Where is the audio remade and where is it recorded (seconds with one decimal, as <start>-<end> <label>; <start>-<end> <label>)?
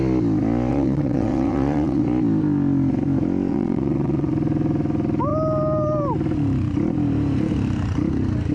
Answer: 0.0-0.7 recorded; 0.7-2.0 remade; 2.0-3.5 recorded; 3.5-4.3 remade; 4.3-8.5 recorded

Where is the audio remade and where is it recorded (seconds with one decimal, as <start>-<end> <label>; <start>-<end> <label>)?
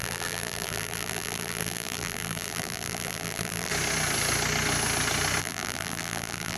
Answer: 0.0-3.7 remade; 3.7-5.4 recorded; 5.4-6.6 remade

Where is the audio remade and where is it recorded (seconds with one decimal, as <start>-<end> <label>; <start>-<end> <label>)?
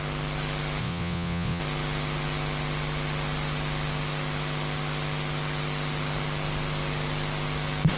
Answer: 0.0-0.8 recorded; 0.8-1.6 remade; 1.6-8.0 recorded